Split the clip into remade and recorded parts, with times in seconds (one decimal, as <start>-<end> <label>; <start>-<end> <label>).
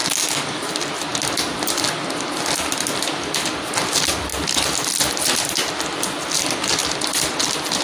0.0-0.7 remade; 0.7-7.8 recorded